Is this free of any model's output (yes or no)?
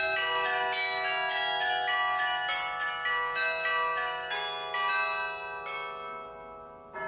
yes